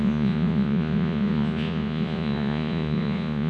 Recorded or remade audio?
remade